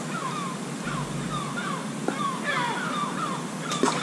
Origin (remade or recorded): recorded